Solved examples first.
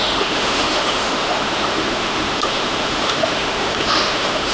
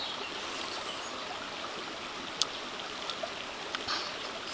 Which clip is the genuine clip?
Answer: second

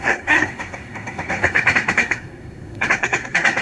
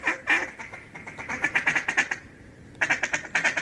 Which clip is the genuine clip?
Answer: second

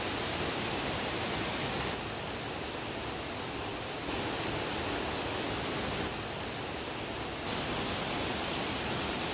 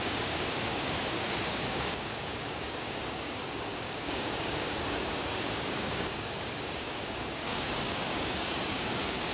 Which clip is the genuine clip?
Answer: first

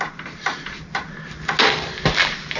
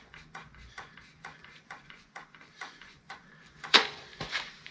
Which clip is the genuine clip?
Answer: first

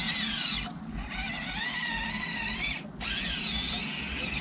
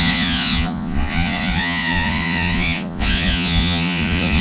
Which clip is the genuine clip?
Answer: first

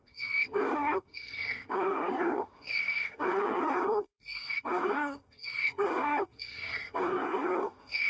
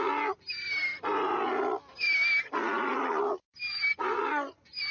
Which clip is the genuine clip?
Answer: second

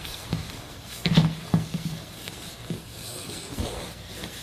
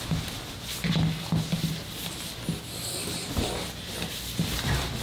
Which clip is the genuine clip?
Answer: second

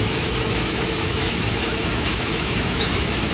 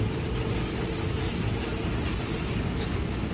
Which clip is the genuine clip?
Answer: second